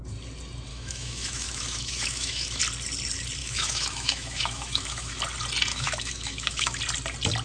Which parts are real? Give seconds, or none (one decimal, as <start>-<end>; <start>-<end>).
0.0-0.7; 2.6-3.4; 5.2-5.7; 6.8-7.4